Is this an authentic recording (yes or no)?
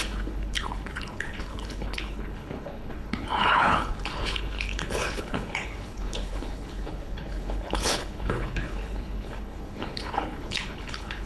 no